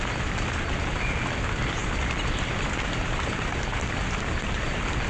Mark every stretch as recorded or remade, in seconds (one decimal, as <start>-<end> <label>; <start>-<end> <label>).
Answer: 0.0-5.1 recorded